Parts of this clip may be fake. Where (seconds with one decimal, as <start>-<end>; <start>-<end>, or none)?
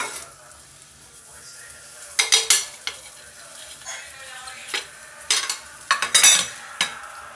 none